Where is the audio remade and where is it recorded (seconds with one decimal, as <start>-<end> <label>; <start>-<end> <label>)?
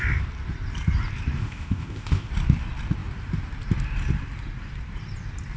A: 0.0-1.4 recorded; 1.4-2.3 remade; 2.3-5.6 recorded